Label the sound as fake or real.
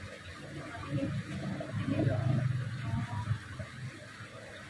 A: real